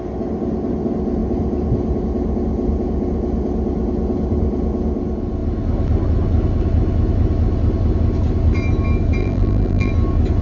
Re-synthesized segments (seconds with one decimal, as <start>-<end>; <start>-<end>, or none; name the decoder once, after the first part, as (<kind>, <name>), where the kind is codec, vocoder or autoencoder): 9.2-9.9 (vocoder, BigVGAN v2)